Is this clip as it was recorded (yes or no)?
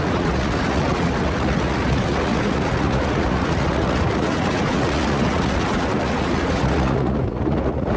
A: no